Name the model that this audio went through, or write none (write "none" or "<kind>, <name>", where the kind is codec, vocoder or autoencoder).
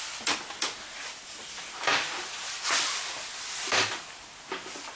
none